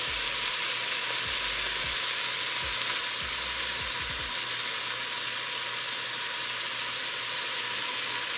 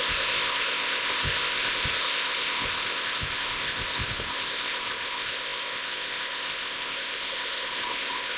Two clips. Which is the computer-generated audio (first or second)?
second